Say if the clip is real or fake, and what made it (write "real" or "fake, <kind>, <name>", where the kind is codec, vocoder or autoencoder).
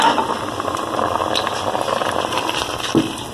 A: real